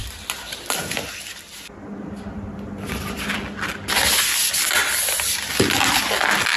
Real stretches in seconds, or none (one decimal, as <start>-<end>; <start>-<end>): 0.0-6.6